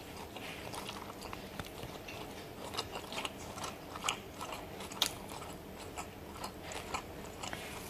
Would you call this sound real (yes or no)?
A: yes